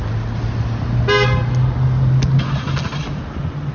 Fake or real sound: real